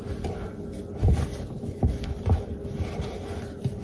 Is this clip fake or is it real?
real